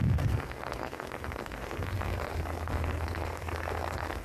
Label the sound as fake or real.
fake